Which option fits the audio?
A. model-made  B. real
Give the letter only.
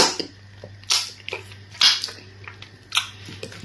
B